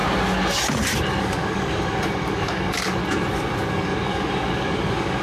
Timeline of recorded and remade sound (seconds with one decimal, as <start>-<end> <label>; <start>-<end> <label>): 0.0-1.2 recorded; 1.2-3.0 remade; 3.0-3.7 recorded; 3.7-5.2 remade